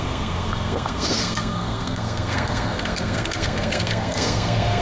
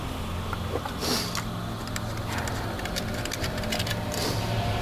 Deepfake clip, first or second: first